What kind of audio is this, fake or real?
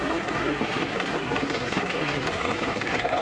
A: fake